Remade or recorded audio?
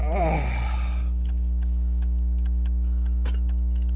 recorded